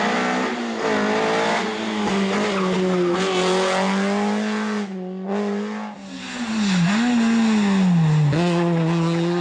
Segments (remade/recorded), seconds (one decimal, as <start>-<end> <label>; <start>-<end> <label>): 0.0-9.4 recorded

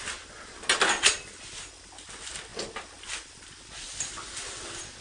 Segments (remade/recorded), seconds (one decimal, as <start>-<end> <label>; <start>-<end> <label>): 0.0-5.0 recorded

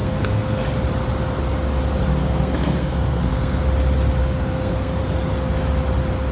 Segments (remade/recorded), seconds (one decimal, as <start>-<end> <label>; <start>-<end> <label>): 0.0-0.6 remade; 0.6-2.2 recorded; 2.2-3.6 remade; 3.6-4.2 recorded; 4.2-5.0 remade; 5.0-6.3 recorded

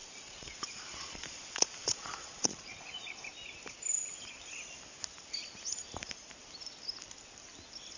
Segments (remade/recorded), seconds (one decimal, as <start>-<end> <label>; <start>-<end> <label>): 0.0-3.2 remade; 3.2-8.0 recorded

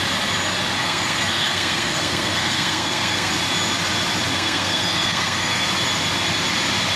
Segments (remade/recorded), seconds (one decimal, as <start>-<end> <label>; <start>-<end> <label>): 0.0-0.8 recorded; 0.8-3.3 remade; 3.3-4.3 recorded; 4.3-5.7 remade; 5.7-7.0 recorded

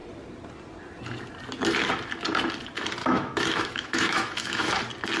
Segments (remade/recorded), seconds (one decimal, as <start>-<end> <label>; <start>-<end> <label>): 0.0-3.0 recorded; 3.0-4.7 remade; 4.7-5.2 recorded